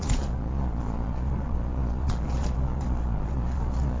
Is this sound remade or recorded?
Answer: remade